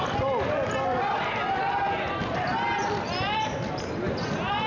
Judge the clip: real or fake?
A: real